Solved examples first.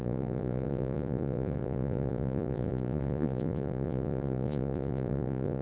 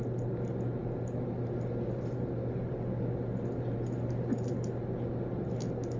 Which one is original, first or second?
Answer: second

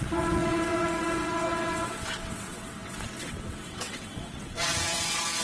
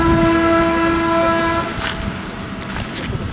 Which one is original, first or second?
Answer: second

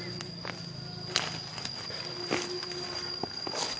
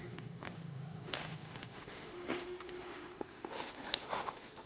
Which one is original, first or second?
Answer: first